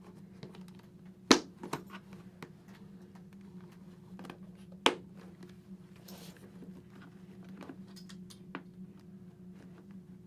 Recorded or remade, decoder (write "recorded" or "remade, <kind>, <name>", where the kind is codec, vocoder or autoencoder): recorded